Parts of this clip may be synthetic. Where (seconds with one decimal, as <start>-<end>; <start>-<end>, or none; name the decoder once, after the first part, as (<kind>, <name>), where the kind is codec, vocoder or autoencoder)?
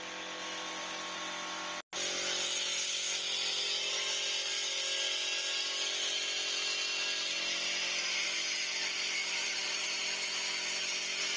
9.2-10.0 (vocoder, BigVGAN v2)